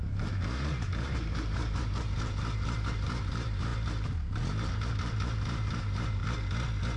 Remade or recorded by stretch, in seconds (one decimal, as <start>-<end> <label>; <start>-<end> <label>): 0.0-6.2 remade; 6.2-7.0 recorded